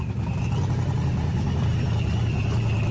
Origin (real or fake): real